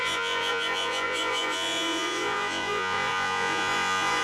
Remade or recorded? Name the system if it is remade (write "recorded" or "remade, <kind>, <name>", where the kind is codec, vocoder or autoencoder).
remade, vocoder, Vocos